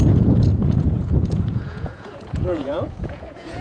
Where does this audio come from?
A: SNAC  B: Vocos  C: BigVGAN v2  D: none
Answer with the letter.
B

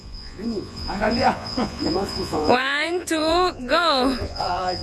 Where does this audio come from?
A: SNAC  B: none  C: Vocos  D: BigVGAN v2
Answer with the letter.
C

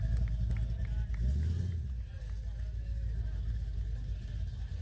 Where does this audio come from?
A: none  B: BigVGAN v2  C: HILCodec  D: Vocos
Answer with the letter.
A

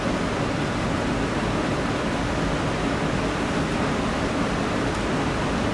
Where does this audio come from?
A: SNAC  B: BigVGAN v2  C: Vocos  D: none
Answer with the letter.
D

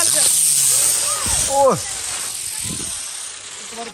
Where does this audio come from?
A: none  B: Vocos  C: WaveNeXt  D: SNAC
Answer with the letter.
A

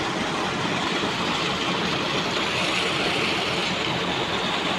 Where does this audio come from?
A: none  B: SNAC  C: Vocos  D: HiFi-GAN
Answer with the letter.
A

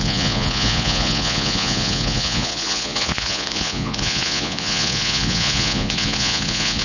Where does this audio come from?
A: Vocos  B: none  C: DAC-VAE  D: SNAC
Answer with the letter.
A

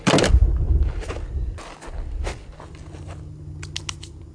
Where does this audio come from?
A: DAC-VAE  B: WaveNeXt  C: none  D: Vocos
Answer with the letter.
C